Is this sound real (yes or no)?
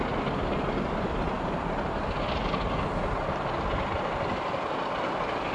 yes